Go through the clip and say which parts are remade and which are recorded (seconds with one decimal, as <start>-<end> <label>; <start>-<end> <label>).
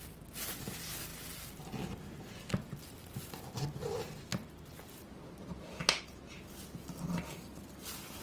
0.0-8.2 recorded